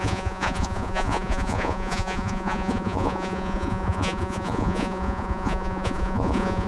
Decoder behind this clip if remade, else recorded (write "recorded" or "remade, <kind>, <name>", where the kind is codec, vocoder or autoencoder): remade, vocoder, Vocos